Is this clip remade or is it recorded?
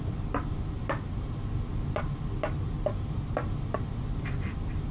recorded